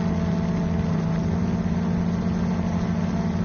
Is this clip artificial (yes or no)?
no